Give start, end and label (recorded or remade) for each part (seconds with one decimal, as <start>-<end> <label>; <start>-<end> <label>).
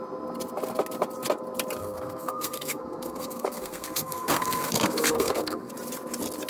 0.0-1.8 recorded; 1.8-5.7 remade; 5.7-6.5 recorded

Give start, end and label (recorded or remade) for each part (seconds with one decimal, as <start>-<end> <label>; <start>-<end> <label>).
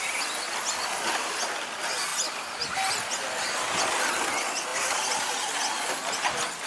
0.0-6.7 recorded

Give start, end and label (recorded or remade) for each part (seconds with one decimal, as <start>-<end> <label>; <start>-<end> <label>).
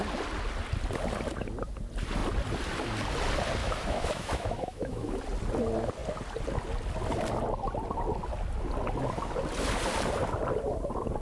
0.0-3.6 recorded; 3.6-5.2 remade; 5.2-11.2 recorded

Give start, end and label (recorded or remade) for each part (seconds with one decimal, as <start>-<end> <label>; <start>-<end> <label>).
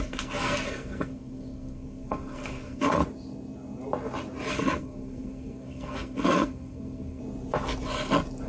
0.0-3.0 remade; 3.0-4.5 recorded; 4.5-7.2 remade; 7.2-8.5 recorded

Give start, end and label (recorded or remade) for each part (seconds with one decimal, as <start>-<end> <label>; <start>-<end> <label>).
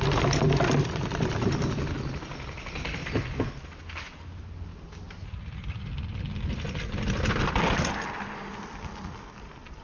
0.0-9.8 recorded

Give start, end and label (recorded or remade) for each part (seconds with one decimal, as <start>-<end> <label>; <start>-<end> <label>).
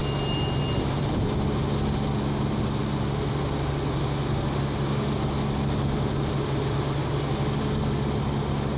0.0-8.8 recorded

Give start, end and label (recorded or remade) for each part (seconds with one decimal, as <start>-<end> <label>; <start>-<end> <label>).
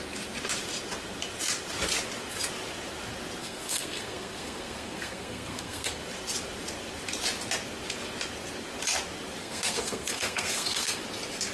0.0-3.4 recorded; 3.4-6.0 remade; 6.0-9.4 recorded; 9.4-11.0 remade; 11.0-11.5 recorded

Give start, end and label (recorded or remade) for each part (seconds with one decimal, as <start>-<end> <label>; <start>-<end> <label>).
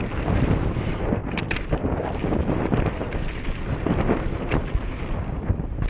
0.0-5.9 recorded